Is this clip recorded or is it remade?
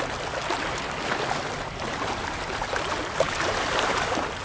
recorded